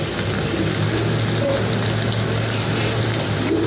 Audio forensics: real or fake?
real